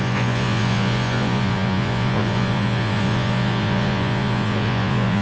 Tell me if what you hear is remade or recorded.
remade